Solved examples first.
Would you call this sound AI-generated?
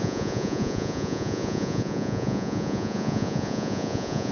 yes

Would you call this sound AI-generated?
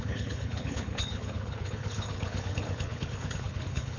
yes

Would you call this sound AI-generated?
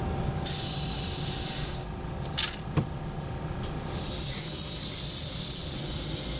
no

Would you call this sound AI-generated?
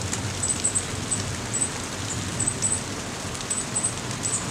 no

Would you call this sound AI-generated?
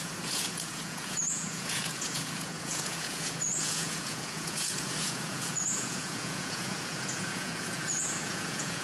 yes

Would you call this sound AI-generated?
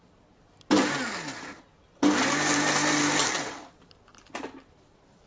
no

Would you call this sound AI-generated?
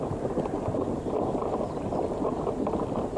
no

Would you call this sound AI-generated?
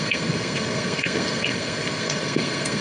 yes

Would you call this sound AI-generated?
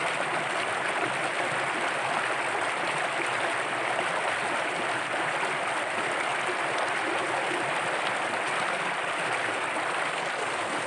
no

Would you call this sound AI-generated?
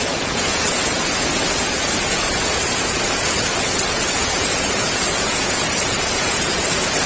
yes